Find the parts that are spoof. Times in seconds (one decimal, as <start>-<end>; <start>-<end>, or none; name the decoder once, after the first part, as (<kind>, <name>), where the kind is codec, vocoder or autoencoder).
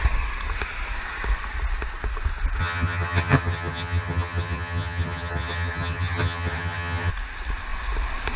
2.6-7.1 (vocoder, HiFi-GAN)